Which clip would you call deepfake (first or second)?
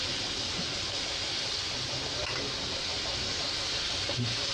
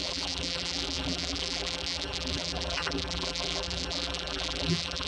second